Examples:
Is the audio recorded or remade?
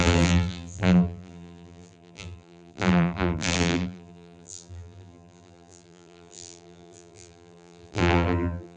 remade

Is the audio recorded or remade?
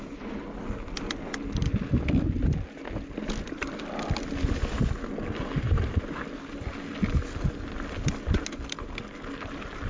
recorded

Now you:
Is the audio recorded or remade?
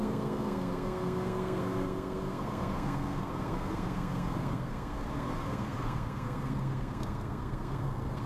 remade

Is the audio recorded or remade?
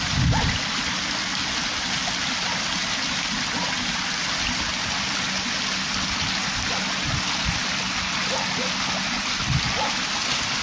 recorded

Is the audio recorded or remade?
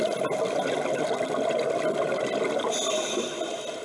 recorded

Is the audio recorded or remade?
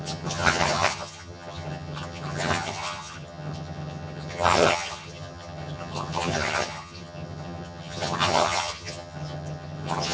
remade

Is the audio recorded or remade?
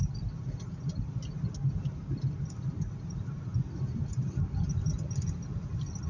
recorded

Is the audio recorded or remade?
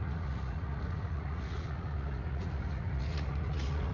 remade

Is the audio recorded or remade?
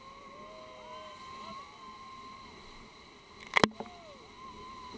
recorded